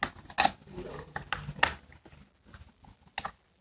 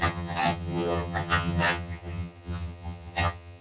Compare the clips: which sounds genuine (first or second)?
first